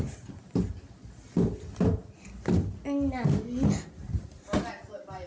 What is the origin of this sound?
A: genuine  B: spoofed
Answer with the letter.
A